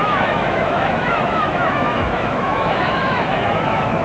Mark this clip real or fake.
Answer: fake